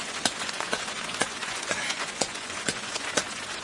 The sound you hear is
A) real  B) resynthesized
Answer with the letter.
B